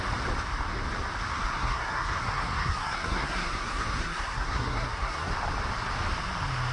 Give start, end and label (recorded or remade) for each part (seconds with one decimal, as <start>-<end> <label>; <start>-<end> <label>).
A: 0.0-1.3 recorded; 1.3-5.3 remade; 5.3-6.7 recorded